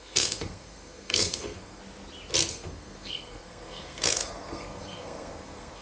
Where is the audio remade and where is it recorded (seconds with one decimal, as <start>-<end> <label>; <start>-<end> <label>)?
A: 0.0-1.8 remade; 1.8-2.5 recorded; 2.5-5.8 remade

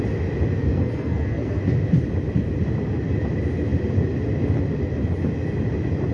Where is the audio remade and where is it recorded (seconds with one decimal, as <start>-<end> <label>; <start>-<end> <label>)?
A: 0.0-0.6 recorded; 0.6-1.6 remade; 1.6-6.1 recorded

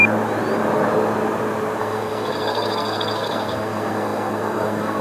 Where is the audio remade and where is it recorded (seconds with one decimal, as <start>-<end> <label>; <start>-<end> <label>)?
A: 0.0-1.8 recorded; 1.8-5.0 remade

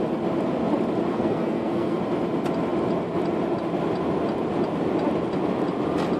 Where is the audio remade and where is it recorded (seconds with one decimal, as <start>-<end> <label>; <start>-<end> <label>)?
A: 0.0-1.1 recorded; 1.1-2.0 remade; 2.0-6.2 recorded

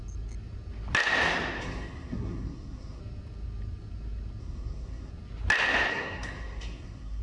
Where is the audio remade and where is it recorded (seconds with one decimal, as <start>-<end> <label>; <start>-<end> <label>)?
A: 0.0-1.6 recorded; 1.6-3.0 remade; 3.0-4.4 recorded; 4.4-5.1 remade; 5.1-5.9 recorded; 5.9-7.2 remade

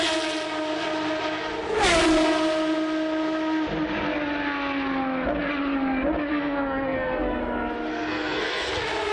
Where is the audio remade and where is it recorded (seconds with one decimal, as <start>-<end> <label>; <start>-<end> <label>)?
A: 0.0-6.3 recorded; 6.3-7.4 remade; 7.4-7.9 recorded; 7.9-8.7 remade; 8.7-9.1 recorded